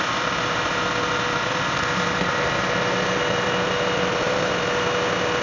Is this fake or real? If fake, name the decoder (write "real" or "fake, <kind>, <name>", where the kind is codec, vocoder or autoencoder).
real